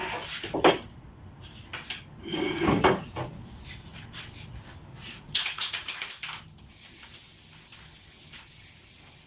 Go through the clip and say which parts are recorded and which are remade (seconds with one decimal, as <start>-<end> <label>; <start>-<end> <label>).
0.0-4.9 recorded; 4.9-6.1 remade; 6.1-9.3 recorded